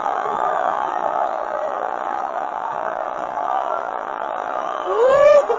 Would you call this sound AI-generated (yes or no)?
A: yes